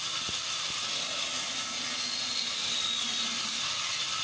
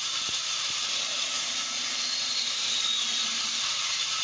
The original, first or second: first